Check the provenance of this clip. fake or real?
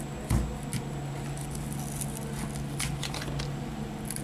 real